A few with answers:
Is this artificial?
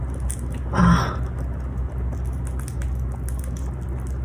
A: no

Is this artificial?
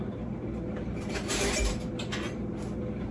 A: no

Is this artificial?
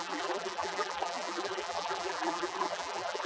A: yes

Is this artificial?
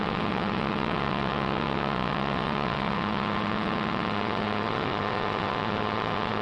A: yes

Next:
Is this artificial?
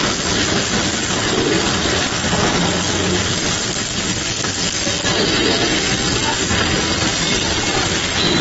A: no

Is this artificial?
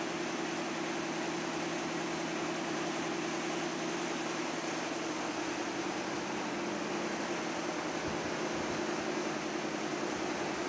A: no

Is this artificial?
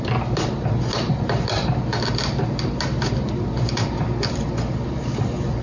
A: no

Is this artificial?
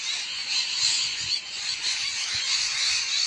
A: yes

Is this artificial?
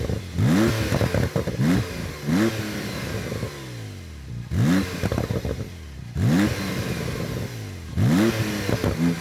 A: no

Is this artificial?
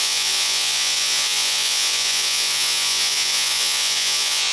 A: yes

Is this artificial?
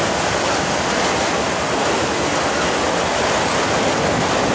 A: no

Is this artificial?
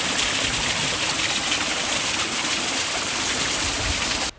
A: no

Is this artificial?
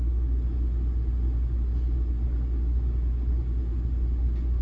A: no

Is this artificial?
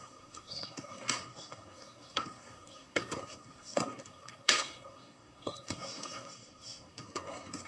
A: yes